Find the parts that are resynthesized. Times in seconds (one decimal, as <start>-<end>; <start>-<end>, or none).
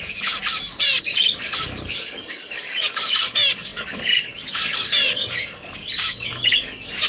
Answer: 0.0-7.1